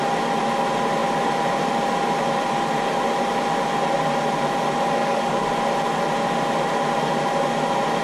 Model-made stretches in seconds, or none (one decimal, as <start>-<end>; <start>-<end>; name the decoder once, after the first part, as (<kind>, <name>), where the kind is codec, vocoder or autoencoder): 5.0-5.5 (codec, DAC)